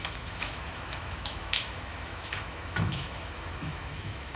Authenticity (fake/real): fake